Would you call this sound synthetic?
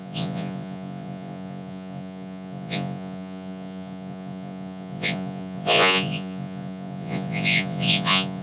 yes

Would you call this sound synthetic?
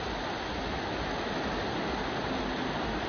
no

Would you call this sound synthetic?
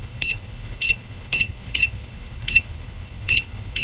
yes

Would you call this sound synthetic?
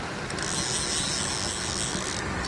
no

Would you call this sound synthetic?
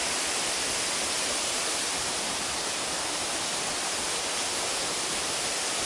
no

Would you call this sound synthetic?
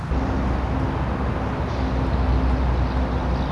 no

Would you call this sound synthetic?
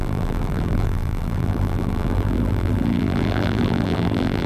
yes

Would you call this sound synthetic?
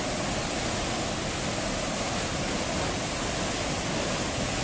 no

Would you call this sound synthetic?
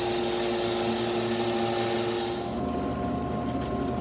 no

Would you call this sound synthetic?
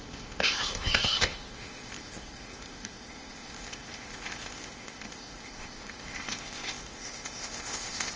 yes